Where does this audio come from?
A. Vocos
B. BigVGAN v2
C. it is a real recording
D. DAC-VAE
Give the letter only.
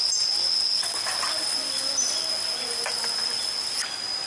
C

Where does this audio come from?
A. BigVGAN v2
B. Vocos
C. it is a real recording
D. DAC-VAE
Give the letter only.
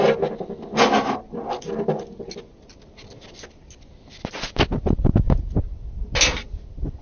C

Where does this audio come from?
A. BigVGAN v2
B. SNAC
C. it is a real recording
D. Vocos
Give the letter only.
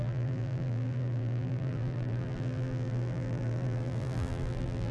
A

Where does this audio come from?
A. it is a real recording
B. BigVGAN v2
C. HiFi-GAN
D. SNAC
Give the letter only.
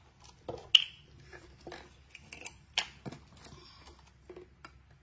A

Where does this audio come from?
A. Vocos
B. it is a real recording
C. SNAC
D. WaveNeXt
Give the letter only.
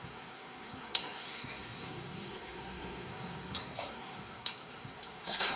C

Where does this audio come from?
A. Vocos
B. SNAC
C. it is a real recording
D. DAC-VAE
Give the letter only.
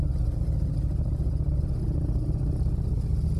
C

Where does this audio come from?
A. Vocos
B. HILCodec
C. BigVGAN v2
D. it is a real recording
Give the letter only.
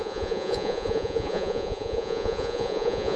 A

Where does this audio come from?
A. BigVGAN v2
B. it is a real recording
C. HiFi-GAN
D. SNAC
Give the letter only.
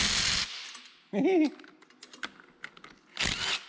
B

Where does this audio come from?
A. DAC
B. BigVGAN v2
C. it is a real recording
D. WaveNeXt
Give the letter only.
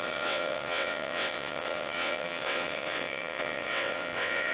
D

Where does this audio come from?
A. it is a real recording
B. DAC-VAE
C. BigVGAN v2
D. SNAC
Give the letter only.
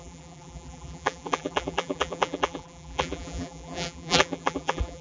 C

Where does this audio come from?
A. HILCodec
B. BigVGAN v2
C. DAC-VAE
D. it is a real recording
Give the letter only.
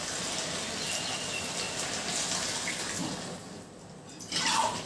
D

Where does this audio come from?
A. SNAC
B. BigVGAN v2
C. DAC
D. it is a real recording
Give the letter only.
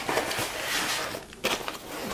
D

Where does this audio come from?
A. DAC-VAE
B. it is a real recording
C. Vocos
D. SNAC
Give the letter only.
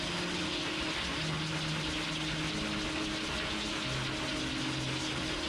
B